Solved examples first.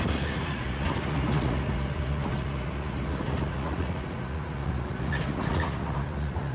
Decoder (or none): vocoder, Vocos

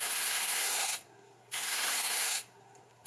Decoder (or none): codec, SNAC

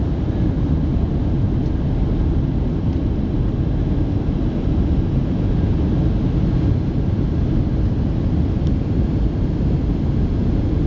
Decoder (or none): none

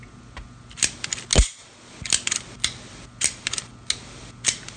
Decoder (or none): none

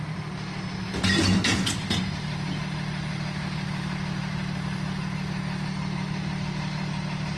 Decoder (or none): none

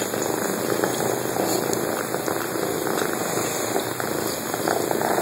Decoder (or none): none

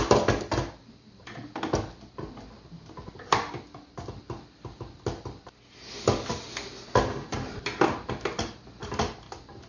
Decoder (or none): none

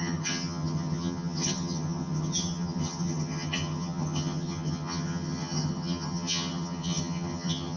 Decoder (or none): vocoder, HiFi-GAN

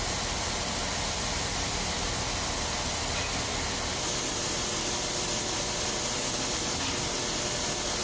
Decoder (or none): none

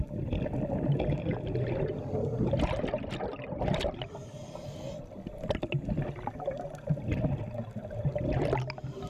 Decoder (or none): none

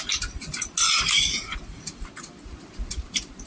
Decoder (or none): none